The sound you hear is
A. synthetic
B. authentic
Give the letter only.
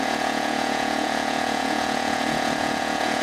A